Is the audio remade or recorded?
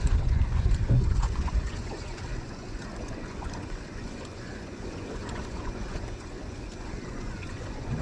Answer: remade